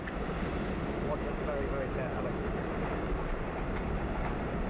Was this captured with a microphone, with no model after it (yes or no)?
yes